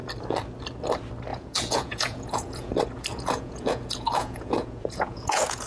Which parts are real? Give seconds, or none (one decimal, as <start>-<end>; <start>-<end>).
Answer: 0.0-1.3; 2.7-3.1